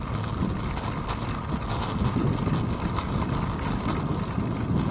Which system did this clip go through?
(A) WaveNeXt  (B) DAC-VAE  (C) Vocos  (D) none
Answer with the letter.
D